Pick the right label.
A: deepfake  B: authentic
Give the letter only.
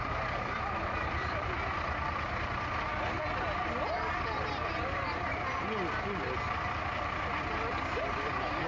B